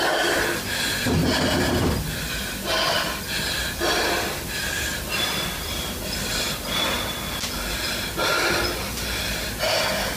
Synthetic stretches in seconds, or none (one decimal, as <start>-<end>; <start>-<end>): none